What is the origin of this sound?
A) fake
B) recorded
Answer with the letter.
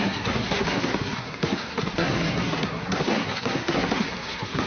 A